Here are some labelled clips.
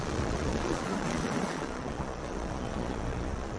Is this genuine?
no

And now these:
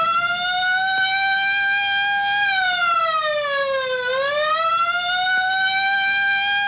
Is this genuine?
yes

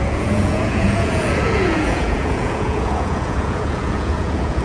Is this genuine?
no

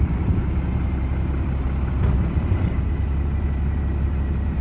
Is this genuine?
yes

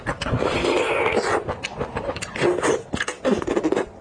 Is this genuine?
yes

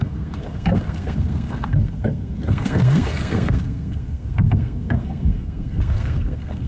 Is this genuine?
no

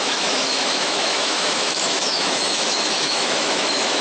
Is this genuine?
no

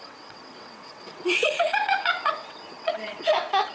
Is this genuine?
no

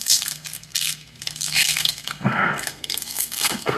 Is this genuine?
no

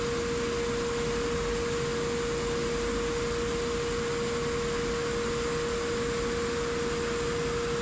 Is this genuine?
yes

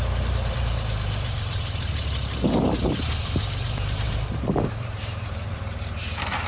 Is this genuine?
no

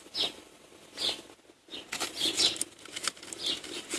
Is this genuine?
yes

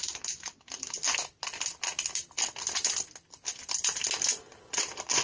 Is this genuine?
yes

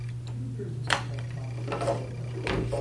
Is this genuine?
yes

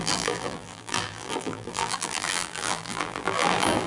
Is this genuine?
no